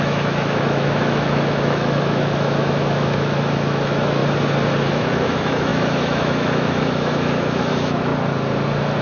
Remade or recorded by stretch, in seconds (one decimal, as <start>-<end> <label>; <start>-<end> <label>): 0.0-4.2 remade; 4.2-4.9 recorded; 4.9-8.1 remade; 8.1-9.0 recorded